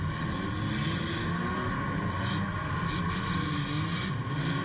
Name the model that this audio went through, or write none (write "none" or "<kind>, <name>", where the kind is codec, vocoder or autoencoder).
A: none